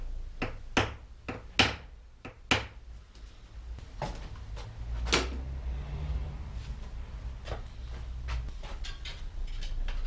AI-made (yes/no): no